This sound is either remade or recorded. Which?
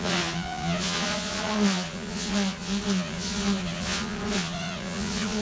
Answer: remade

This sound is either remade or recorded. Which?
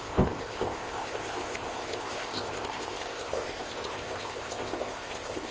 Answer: remade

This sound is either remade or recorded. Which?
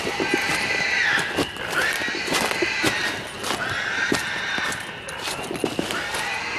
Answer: recorded